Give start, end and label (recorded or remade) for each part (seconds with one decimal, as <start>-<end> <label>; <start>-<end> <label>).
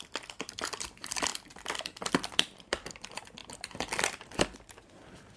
0.0-1.3 remade; 1.3-2.1 recorded; 2.1-5.4 remade